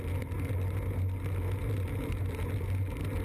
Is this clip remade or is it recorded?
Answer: recorded